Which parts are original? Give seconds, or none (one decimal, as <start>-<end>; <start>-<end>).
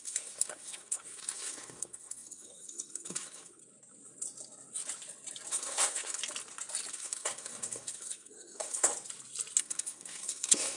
3.6-5.5; 6.2-6.9; 8.9-9.6